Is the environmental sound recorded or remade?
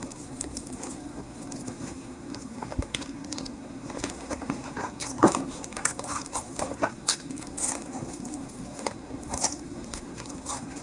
remade